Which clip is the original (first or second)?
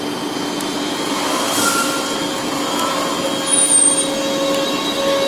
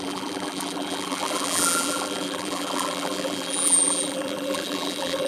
first